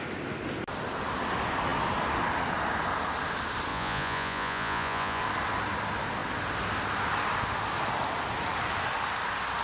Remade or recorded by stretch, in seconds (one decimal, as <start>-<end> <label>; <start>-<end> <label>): 0.0-3.7 recorded; 3.7-5.2 remade; 5.2-9.6 recorded